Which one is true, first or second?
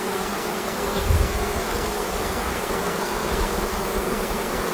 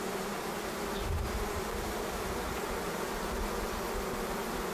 second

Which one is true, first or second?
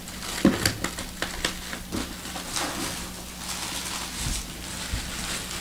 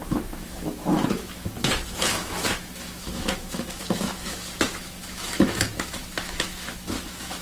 first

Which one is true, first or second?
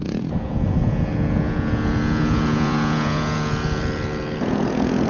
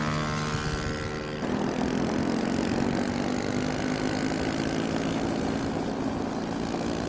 second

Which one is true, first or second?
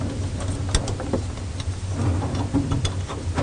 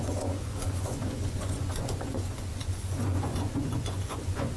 first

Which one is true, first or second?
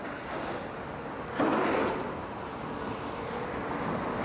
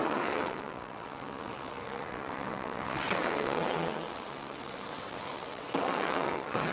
first